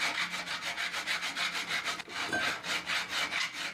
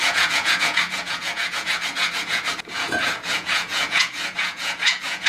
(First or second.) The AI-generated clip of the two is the second